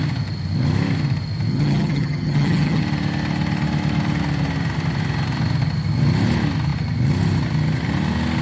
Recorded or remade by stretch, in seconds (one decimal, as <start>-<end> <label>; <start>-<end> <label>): 0.0-1.5 recorded; 1.5-2.8 remade; 2.8-8.4 recorded